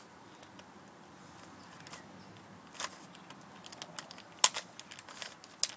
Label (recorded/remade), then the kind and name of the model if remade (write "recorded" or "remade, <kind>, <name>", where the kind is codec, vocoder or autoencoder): recorded